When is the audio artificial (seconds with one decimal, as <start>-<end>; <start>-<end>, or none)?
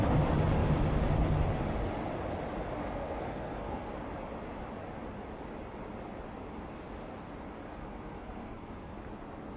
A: 2.8-3.9; 7.8-9.0